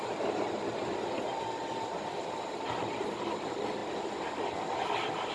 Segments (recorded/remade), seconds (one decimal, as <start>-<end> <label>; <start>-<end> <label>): 0.0-5.3 recorded